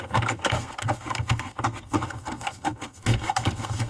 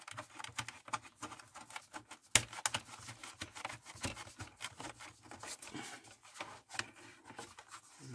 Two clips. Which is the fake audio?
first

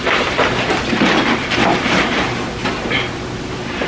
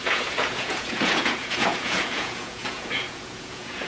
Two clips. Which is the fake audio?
second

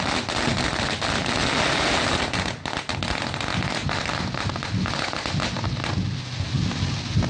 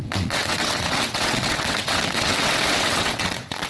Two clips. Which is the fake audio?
second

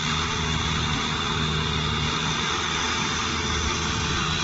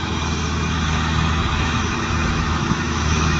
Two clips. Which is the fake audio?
second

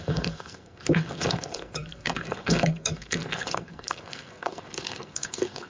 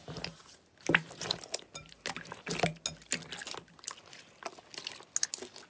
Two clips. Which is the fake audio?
first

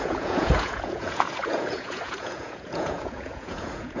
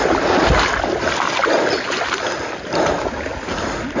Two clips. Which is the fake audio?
first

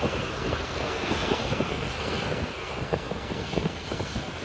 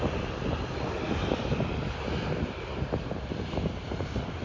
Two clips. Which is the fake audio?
first